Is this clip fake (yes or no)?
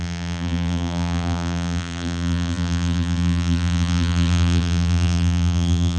yes